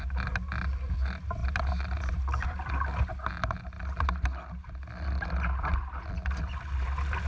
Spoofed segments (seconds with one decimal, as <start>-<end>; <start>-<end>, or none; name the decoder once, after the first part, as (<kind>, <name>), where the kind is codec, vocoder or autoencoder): none